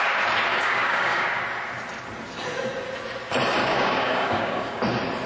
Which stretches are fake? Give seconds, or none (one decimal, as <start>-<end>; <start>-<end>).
0.5-1.4; 3.6-4.8